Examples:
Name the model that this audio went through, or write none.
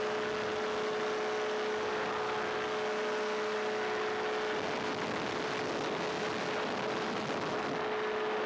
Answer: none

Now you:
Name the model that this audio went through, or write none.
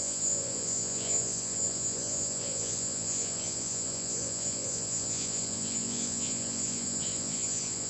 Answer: vocoder, Vocos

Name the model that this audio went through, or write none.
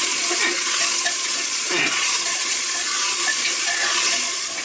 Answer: vocoder, Vocos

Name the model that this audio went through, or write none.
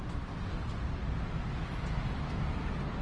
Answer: none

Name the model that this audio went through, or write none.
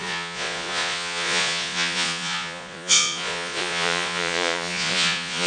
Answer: vocoder, Vocos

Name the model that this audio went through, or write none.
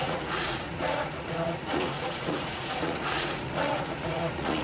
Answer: vocoder, Vocos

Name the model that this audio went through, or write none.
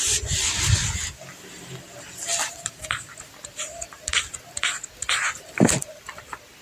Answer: none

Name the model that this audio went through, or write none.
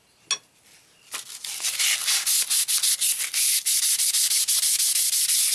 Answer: none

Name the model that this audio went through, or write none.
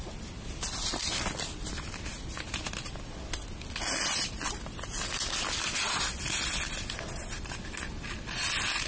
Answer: none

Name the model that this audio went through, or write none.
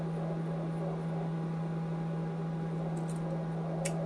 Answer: none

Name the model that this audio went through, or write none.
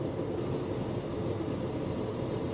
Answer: none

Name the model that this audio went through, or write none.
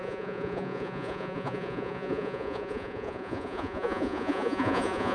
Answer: vocoder, Vocos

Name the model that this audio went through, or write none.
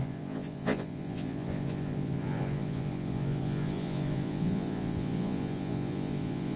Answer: vocoder, Vocos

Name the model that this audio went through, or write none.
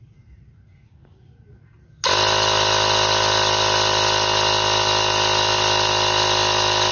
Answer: none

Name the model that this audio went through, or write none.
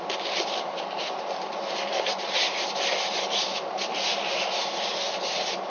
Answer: none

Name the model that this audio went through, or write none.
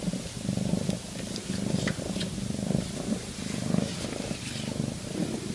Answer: none